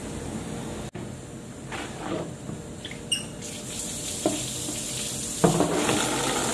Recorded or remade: recorded